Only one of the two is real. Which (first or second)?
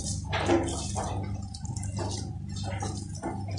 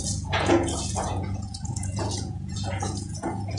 first